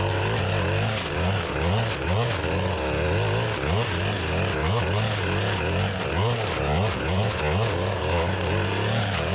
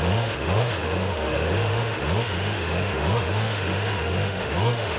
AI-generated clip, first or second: second